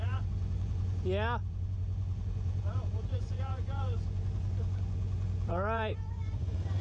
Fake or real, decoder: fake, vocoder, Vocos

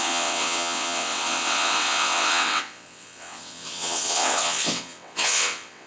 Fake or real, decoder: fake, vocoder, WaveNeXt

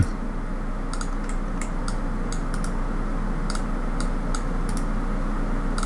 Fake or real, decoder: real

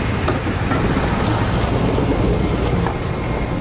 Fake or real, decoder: real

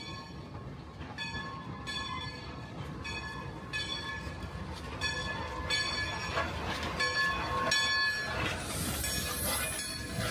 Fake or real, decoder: real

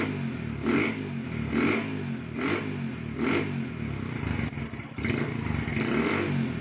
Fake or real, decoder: real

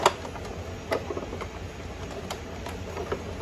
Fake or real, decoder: real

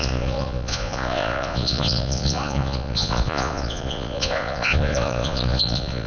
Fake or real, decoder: fake, vocoder, Vocos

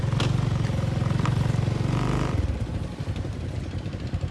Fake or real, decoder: real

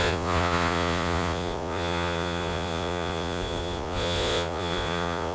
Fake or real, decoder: fake, vocoder, Vocos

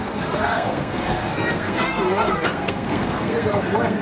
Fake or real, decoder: fake, codec, SNAC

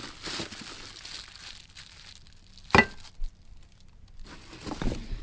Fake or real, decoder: real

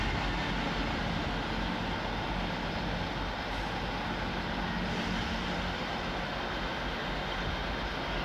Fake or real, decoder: real